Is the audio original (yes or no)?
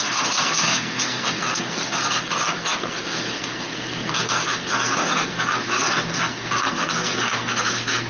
no